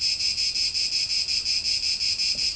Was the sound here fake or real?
real